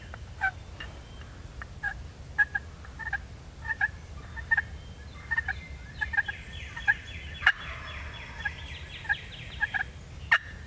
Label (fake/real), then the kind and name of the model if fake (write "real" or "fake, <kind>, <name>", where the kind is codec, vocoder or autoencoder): real